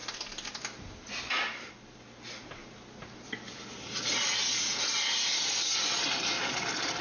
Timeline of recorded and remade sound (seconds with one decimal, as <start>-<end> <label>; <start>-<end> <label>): 0.0-7.0 recorded